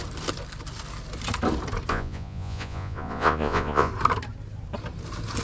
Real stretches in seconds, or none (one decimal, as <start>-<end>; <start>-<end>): 0.0-1.9; 3.9-5.4